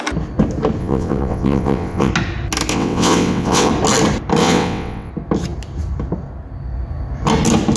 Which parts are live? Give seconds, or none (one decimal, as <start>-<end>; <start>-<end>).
0.0-0.8; 2.1-2.7; 3.7-4.4; 5.1-7.8